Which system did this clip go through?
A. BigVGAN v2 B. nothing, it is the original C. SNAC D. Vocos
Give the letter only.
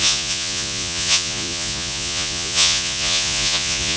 D